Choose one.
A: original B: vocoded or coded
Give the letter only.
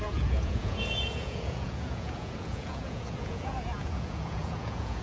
B